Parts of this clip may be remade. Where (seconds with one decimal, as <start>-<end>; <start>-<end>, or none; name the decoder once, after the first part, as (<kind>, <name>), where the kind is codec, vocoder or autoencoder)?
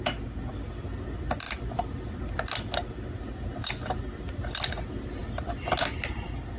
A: none